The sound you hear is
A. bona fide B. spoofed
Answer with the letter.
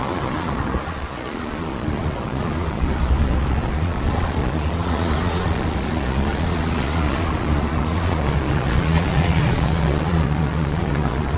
B